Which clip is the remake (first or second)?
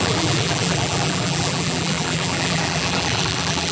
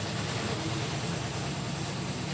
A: first